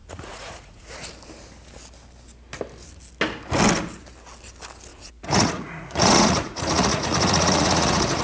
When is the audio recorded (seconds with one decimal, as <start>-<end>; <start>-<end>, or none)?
0.9-4.9